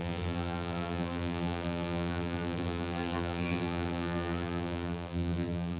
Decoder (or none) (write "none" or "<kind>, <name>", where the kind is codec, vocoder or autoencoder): vocoder, BigVGAN v2